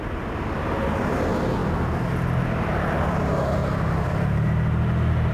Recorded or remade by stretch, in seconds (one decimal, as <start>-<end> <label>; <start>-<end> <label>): 0.0-5.3 recorded